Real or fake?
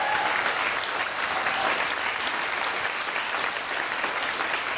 real